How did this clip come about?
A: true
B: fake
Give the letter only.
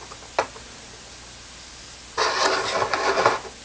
A